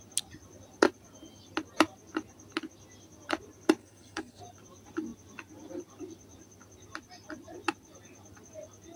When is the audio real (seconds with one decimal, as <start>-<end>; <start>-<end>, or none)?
0.0-3.8; 4.4-9.0

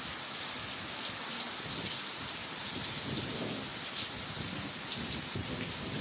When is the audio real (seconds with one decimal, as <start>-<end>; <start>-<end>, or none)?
0.0-2.4; 2.9-3.7; 5.5-6.0

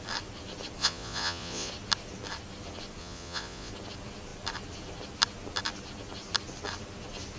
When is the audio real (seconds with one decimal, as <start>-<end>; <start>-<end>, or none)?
0.0-0.8; 1.7-3.0; 3.7-7.4

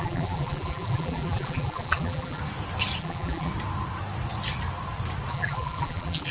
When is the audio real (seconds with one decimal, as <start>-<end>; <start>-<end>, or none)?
2.4-3.0; 3.5-5.3

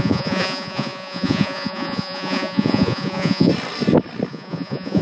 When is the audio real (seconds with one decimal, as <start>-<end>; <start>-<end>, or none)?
3.5-4.3

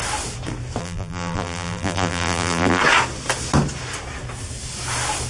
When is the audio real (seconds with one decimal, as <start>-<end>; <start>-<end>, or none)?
0.0-0.8; 2.8-5.3

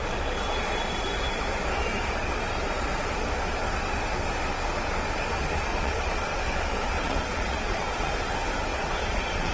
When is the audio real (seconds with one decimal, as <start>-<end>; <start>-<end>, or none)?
0.0-5.7; 6.4-7.0; 8.1-8.7

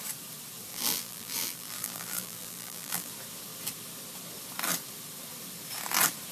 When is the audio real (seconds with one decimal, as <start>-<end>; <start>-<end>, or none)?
0.0-0.7; 3.1-6.3